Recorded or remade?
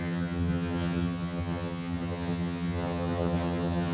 remade